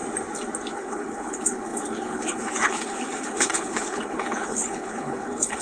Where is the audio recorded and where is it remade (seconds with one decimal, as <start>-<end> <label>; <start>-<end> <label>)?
0.0-0.7 recorded; 0.7-5.6 remade